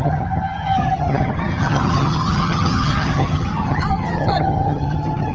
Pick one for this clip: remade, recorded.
remade